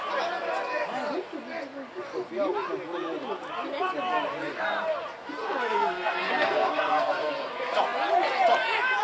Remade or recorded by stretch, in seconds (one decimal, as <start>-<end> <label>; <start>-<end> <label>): 0.0-5.4 recorded; 5.4-7.5 remade; 7.5-9.0 recorded